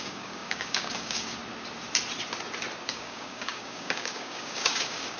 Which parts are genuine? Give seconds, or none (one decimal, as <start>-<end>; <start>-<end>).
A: 1.4-2.8